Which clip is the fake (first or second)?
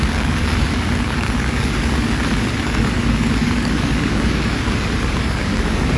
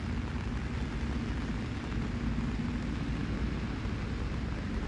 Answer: first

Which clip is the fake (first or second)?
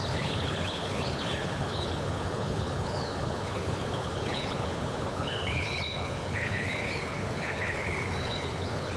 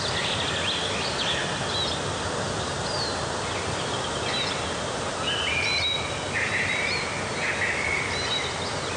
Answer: first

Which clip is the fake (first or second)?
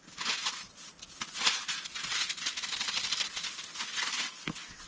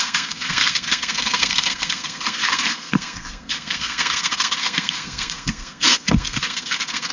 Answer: second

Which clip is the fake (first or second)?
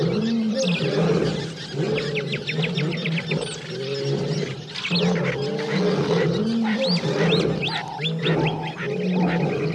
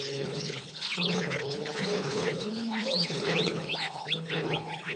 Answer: second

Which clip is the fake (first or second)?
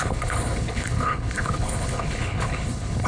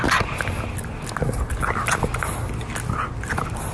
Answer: first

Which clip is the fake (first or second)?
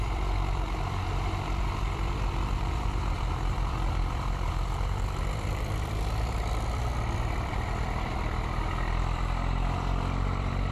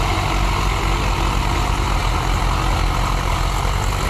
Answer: first